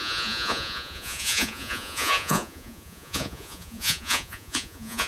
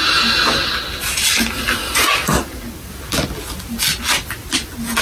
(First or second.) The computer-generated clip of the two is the first